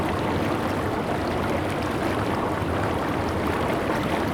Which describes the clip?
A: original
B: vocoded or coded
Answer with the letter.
A